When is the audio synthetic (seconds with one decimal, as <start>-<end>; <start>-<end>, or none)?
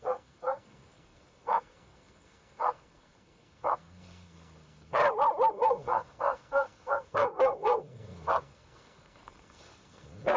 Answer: 0.0-5.0; 5.5-10.4